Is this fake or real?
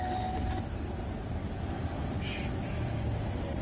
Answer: real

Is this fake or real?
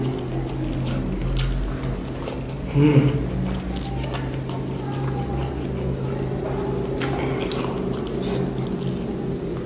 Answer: real